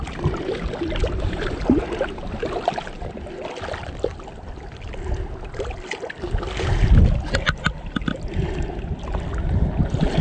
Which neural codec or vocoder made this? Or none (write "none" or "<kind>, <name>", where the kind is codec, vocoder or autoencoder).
none